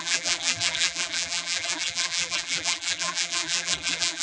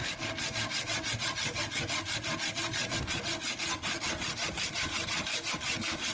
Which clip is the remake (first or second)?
first